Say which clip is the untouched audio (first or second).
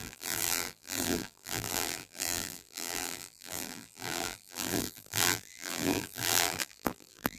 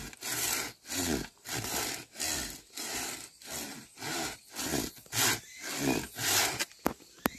second